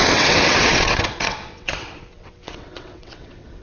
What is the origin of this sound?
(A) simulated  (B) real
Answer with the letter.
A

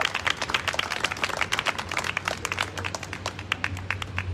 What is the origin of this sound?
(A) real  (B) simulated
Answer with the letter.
A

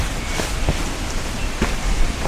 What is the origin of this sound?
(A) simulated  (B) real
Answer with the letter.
B